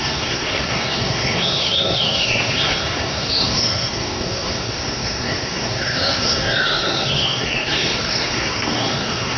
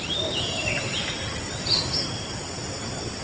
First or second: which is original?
second